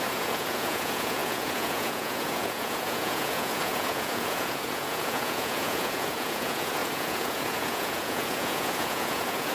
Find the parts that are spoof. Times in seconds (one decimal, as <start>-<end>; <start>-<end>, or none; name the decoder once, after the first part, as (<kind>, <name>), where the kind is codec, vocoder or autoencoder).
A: 0.0-9.5 (vocoder, Vocos)